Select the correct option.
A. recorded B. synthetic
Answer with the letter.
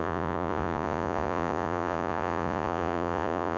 B